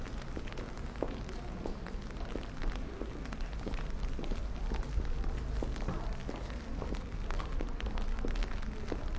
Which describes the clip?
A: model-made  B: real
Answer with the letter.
B